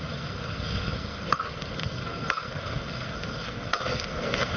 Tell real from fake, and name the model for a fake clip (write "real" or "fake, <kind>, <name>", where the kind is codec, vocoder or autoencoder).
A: fake, codec, SNAC